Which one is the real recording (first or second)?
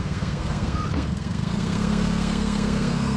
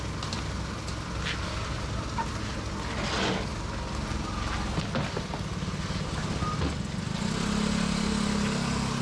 second